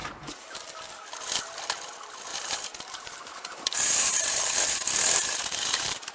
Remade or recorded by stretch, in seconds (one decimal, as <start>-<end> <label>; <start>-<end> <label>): 0.0-0.7 remade; 0.7-2.3 recorded; 2.3-6.1 remade